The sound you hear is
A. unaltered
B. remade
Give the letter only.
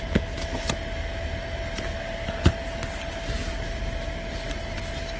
A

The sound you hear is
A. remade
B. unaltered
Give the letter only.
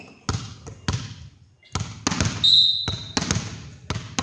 B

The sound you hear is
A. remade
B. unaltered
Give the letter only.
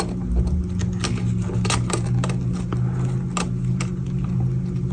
B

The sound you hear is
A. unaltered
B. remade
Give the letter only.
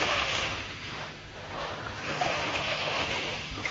B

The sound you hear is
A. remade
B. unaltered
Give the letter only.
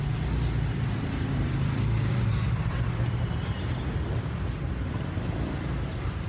B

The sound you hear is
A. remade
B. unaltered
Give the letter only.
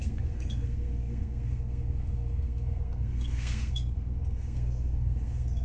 A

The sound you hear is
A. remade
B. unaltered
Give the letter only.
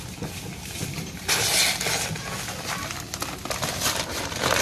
B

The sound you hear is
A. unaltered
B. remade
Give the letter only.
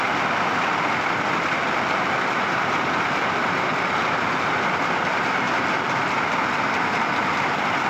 B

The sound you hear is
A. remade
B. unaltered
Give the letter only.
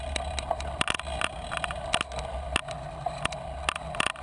B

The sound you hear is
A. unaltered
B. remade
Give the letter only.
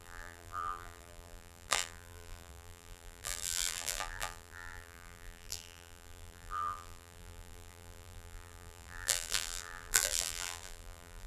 B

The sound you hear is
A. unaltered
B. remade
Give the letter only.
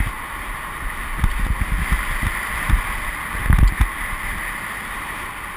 A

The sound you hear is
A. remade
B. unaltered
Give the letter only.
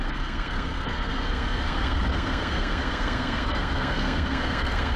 A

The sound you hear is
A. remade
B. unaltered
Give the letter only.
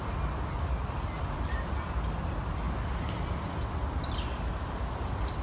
B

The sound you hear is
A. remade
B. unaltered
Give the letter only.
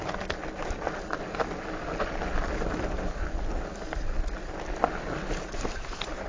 B